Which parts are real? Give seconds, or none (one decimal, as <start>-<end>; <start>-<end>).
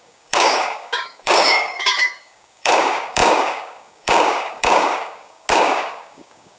none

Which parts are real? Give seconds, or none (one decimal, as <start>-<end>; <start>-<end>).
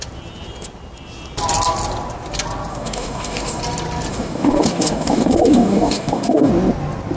0.0-2.7; 3.6-4.1; 6.5-7.2